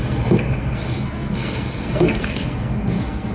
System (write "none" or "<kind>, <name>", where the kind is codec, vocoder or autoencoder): codec, SNAC